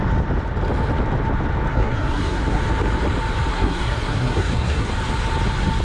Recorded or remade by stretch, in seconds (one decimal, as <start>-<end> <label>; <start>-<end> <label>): 0.0-1.7 recorded; 1.7-2.6 remade; 2.6-3.5 recorded; 3.5-4.9 remade; 4.9-5.8 recorded